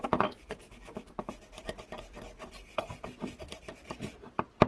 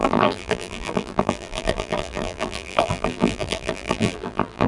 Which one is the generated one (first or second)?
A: second